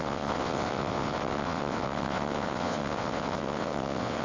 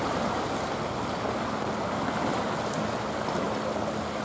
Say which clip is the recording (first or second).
second